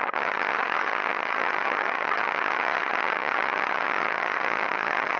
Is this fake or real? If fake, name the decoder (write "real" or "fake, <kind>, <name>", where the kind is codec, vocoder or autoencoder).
fake, vocoder, HiFi-GAN